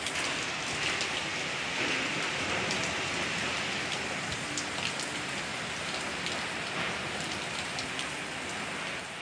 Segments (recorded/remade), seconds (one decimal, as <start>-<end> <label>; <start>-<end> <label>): 0.0-9.2 recorded